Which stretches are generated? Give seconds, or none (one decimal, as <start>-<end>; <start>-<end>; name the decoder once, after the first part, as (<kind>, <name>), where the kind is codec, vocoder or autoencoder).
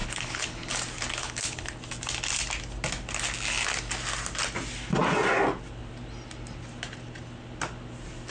0.0-0.7 (codec, HILCodec); 1.2-1.7